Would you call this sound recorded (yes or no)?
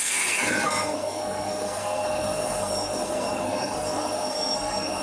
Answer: no